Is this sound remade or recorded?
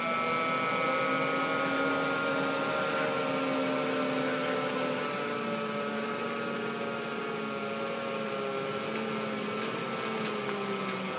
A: recorded